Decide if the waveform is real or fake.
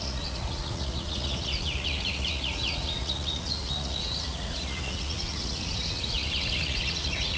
fake